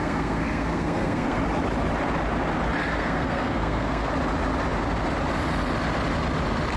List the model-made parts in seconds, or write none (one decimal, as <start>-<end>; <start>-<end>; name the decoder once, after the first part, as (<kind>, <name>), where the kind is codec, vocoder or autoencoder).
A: 0.0-1.4 (codec, SNAC); 2.9-4.1